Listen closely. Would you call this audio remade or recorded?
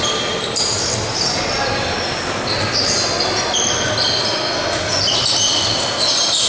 recorded